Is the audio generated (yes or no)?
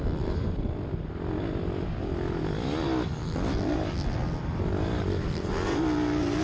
no